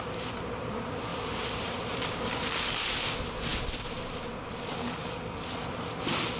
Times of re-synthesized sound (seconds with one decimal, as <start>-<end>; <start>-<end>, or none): 1.1-2.1; 3.5-5.7